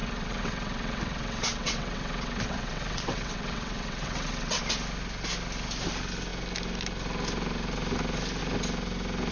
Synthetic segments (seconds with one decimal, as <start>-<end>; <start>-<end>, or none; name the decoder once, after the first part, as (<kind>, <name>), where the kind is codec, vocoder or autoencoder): 0.0-4.6 (vocoder, WaveNeXt)